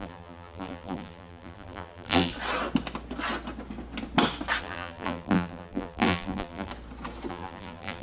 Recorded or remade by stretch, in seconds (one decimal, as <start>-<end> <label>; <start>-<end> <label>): 0.0-2.3 remade; 2.3-4.6 recorded; 4.6-6.7 remade; 6.7-7.3 recorded; 7.3-8.0 remade